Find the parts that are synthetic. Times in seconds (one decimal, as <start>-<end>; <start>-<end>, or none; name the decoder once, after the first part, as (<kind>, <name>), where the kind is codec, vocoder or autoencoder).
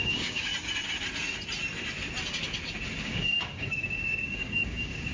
0.0-0.5 (codec, DAC); 3.0-5.1